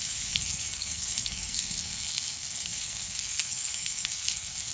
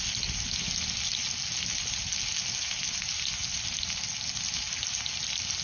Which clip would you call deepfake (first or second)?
first